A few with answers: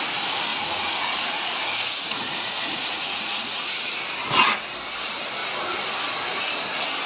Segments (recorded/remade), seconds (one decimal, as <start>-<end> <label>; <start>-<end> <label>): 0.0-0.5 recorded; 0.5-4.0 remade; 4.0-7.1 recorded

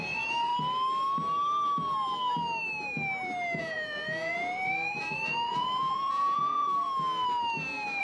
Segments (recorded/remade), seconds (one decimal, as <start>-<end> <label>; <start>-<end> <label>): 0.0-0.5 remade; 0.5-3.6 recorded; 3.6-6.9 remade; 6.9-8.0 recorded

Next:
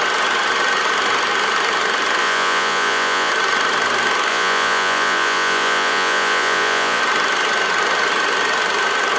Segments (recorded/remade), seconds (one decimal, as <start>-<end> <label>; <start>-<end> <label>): 0.0-2.2 recorded; 2.2-3.3 remade; 3.3-4.3 recorded; 4.3-7.0 remade; 7.0-9.2 recorded